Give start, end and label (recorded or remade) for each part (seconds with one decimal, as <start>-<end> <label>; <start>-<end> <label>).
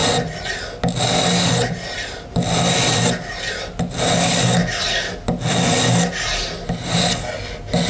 0.0-7.9 recorded